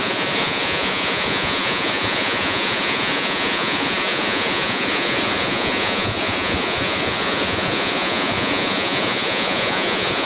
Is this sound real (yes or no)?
no